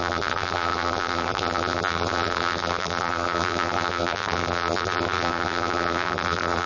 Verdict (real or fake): fake